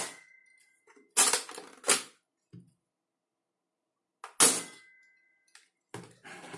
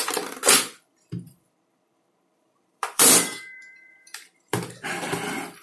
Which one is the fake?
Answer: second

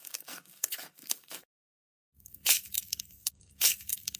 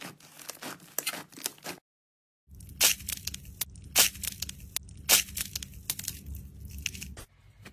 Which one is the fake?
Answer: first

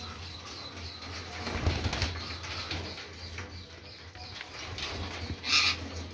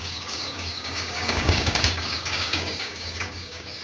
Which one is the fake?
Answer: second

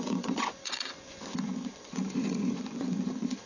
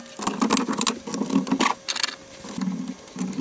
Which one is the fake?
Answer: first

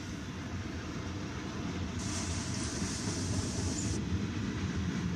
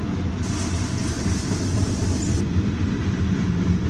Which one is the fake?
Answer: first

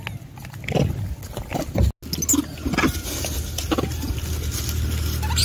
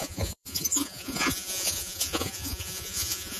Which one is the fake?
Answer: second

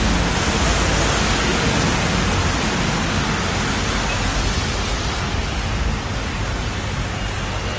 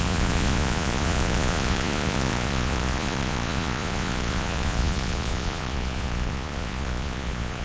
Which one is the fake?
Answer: second